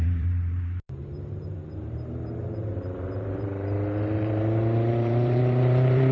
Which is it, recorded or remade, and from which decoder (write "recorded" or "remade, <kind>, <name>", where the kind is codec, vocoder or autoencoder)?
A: remade, vocoder, BigVGAN v2